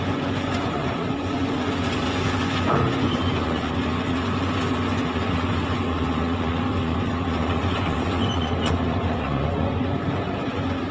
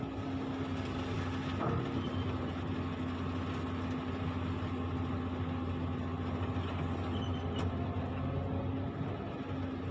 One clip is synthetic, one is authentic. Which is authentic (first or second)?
second